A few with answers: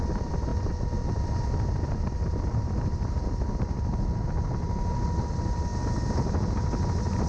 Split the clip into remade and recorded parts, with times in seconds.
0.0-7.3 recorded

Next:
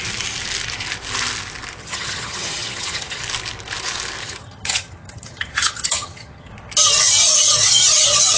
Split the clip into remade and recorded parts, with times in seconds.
0.0-1.8 recorded; 1.8-3.2 remade; 3.2-4.2 recorded; 4.2-6.5 remade; 6.5-8.4 recorded